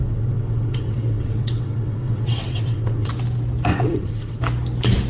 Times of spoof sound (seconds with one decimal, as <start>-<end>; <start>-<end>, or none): 0.0-3.1; 3.7-4.4